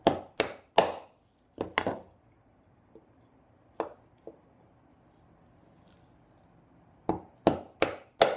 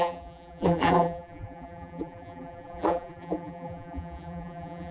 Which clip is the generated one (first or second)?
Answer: second